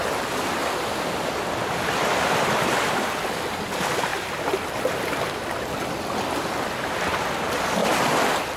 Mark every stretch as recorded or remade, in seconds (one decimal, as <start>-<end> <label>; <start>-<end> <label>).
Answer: 0.0-0.6 recorded; 0.6-1.4 remade; 1.4-8.6 recorded